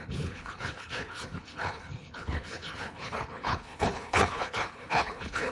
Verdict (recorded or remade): remade